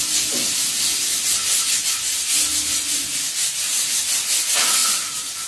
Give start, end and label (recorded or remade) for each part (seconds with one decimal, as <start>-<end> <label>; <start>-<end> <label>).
0.0-5.5 recorded